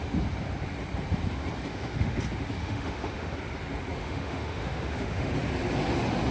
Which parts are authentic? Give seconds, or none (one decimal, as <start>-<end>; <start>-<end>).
0.0-1.7; 2.2-2.6; 3.3-4.0; 5.3-6.3